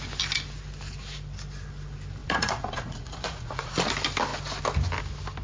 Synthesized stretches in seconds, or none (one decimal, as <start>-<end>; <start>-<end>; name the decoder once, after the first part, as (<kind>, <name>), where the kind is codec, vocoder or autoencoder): 2.2-3.7 (vocoder, Vocos)